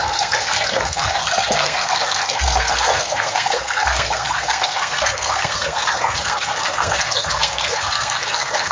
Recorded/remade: remade